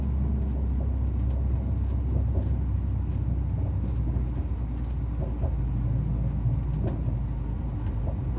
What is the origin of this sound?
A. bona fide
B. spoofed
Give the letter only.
A